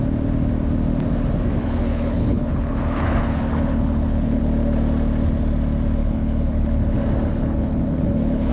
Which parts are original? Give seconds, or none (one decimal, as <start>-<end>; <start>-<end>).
0.0-1.6; 4.4-6.0; 6.8-7.3